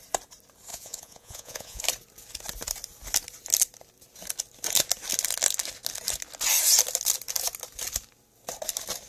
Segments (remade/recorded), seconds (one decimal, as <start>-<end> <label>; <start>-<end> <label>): 0.0-0.7 recorded; 0.7-1.8 remade; 1.8-9.1 recorded